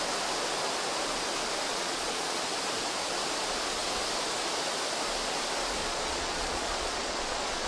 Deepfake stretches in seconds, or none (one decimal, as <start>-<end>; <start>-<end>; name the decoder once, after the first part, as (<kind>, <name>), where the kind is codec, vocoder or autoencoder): 1.7-2.4 (vocoder, Vocos); 5.8-7.7